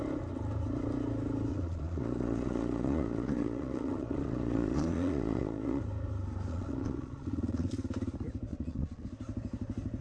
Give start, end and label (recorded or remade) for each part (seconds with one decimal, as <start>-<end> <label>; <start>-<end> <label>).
0.0-1.5 recorded; 1.5-5.8 remade; 5.8-6.5 recorded; 6.5-7.7 remade; 7.7-8.5 recorded; 8.5-9.0 remade; 9.0-10.0 recorded